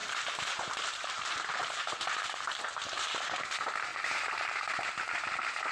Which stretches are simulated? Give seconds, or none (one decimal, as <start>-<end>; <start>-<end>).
0.0-3.4; 3.9-5.0